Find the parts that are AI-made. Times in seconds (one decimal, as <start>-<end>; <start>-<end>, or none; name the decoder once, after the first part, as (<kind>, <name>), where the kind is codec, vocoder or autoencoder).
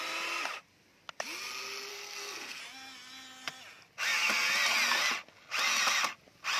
1.9-2.6 (codec, SNAC)